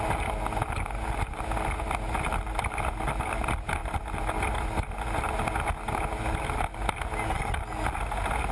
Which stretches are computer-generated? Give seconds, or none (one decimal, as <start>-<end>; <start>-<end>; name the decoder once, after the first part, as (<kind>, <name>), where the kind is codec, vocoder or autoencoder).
none